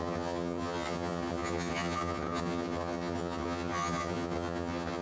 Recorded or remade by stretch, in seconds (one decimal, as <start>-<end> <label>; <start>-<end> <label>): 0.0-5.0 remade